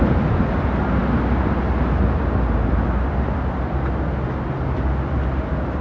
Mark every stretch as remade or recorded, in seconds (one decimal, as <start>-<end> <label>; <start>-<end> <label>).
0.0-5.8 recorded